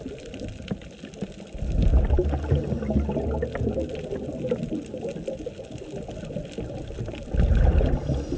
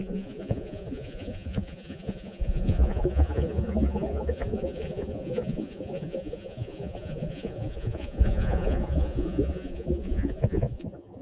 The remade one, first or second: second